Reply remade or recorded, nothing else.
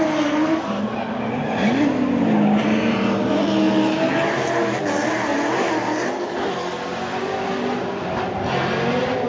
recorded